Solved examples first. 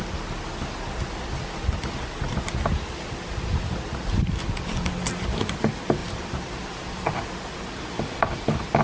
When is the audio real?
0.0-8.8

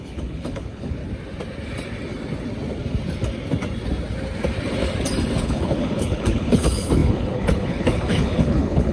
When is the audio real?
1.0-5.4